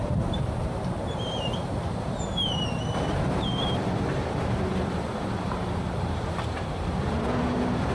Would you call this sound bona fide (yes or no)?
no